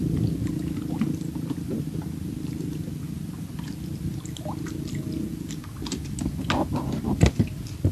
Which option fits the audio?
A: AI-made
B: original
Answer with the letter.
B